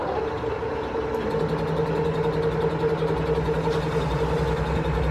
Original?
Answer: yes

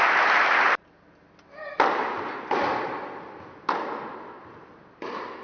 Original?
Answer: yes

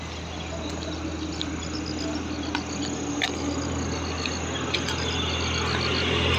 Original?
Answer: yes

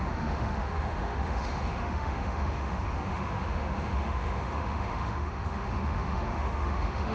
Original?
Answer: no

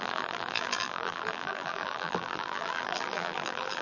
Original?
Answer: no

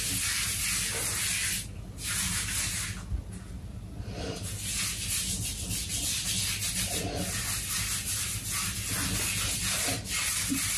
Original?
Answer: yes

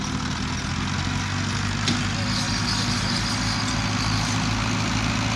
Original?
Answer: yes